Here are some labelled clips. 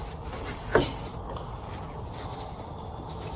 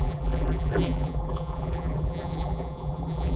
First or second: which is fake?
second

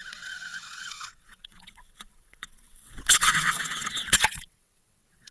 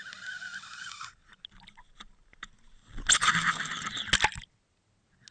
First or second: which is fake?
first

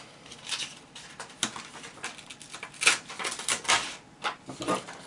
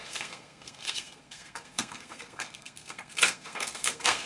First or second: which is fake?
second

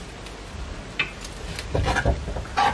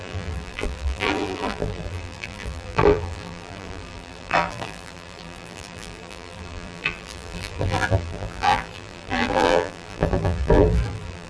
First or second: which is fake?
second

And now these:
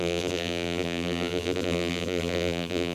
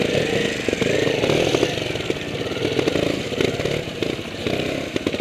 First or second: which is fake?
first